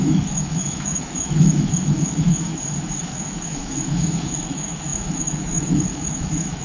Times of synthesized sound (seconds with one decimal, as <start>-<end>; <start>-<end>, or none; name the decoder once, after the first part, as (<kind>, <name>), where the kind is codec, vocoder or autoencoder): 0.0-2.5 (autoencoder, DAC-VAE); 3.0-6.6